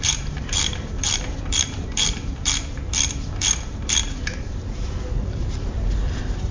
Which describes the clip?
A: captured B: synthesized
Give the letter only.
B